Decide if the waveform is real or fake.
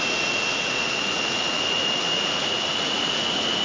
fake